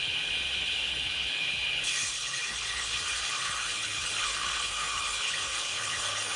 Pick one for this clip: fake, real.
fake